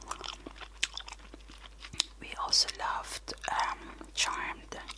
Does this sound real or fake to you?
real